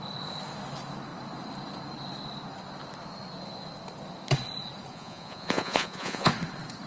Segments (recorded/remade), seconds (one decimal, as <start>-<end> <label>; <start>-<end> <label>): 0.0-4.9 recorded; 4.9-6.3 remade; 6.3-6.9 recorded